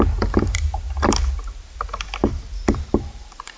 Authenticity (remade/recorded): recorded